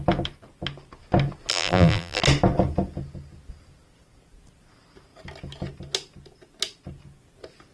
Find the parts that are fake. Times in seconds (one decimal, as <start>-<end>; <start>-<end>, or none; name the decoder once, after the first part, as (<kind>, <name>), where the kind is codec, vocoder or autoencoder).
1.5-2.2 (vocoder, BigVGAN v2)